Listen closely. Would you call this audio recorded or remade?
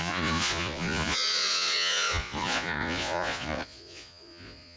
remade